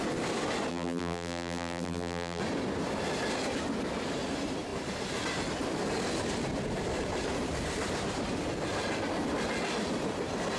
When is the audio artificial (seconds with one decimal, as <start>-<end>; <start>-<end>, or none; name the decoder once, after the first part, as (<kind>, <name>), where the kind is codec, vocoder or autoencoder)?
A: 0.7-2.4 (vocoder, BigVGAN v2)